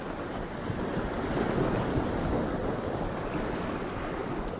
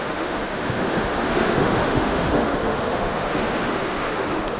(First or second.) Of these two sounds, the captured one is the first